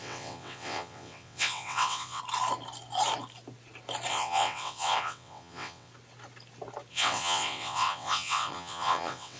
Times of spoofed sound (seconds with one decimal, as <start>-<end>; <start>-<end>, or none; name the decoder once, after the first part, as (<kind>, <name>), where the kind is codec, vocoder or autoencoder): 0.0-2.2 (vocoder, WaveNeXt); 4.1-5.9; 6.9-9.4